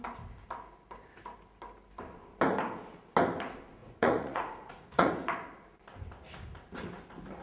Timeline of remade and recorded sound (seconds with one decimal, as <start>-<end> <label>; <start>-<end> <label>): 0.0-3.8 recorded; 3.8-5.1 remade; 5.1-7.4 recorded